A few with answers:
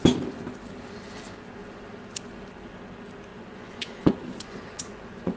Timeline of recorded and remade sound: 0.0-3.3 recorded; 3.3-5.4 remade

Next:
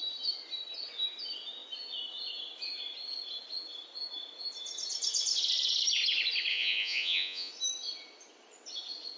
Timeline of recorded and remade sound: 0.0-6.5 recorded; 6.5-7.5 remade; 7.5-9.2 recorded

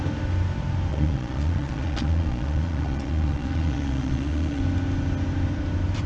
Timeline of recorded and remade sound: 0.0-0.9 recorded; 0.9-4.6 remade; 4.6-6.1 recorded

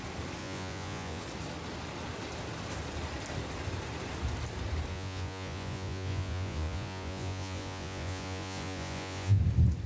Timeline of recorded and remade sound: 0.0-0.4 recorded; 0.4-1.2 remade; 1.2-4.9 recorded; 4.9-9.4 remade; 9.4-9.9 recorded

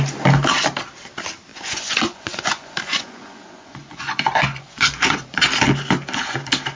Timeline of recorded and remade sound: 0.0-1.5 recorded; 1.5-5.4 remade; 5.4-6.8 recorded